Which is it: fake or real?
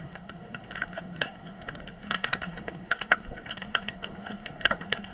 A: fake